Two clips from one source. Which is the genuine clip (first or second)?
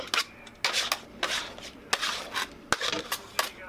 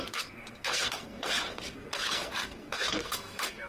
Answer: first